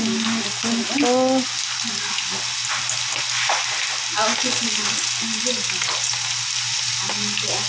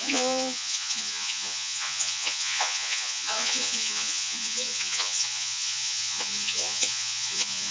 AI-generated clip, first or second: second